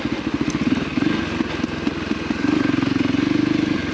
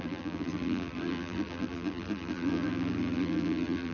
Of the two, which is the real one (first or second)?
first